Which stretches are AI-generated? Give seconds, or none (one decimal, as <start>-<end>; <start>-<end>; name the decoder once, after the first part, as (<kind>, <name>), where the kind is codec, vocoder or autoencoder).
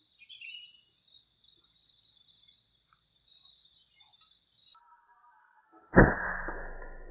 5.4-6.0 (codec, SNAC)